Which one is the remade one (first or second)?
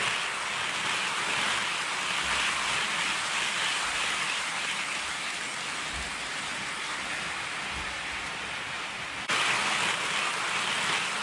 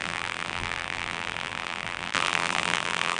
second